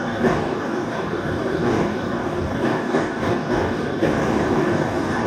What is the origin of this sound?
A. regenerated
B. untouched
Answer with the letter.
A